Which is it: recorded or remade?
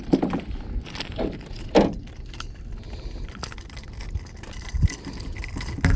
recorded